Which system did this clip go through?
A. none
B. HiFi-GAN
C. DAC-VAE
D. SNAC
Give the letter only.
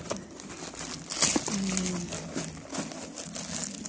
A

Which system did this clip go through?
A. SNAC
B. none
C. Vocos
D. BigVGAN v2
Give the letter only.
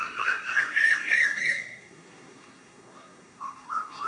A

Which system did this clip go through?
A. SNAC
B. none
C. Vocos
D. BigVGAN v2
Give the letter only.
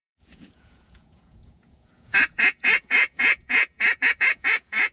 C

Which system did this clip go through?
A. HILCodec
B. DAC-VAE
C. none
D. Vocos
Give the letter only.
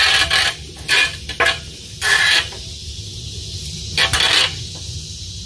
C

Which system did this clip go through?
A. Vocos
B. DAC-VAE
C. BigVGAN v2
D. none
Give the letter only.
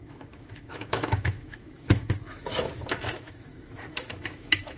B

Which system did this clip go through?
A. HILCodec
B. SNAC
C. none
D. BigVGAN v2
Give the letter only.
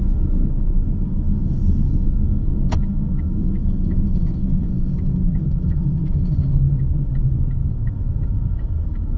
B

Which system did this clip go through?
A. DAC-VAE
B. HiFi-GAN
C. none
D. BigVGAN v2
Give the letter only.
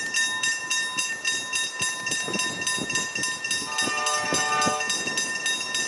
C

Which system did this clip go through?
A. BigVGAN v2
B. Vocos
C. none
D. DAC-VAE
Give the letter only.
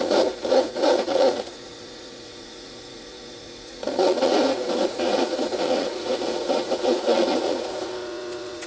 B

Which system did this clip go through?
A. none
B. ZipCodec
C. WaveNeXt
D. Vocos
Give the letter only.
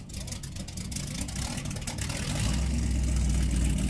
A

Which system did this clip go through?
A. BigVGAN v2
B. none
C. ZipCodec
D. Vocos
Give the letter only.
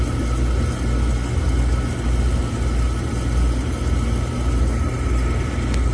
B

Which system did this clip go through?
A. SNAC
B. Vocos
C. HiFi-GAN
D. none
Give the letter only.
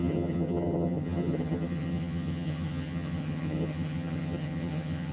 C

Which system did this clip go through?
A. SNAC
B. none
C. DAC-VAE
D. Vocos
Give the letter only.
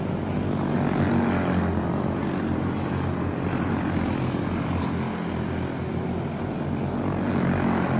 B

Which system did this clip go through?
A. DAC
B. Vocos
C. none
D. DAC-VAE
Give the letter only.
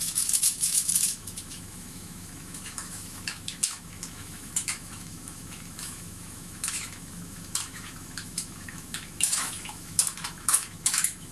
D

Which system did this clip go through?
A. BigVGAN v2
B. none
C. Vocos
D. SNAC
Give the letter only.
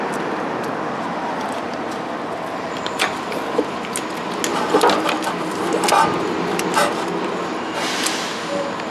B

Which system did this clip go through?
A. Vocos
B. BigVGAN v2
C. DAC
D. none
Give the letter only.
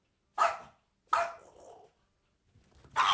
D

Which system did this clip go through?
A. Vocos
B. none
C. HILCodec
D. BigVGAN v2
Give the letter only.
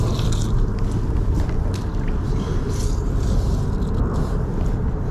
B